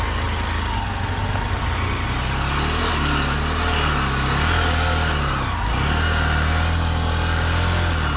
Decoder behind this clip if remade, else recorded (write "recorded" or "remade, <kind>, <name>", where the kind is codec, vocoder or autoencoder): recorded